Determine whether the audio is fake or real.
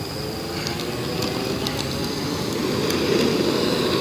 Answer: real